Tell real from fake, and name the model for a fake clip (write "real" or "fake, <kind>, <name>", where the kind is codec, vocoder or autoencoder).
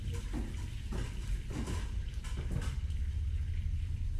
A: real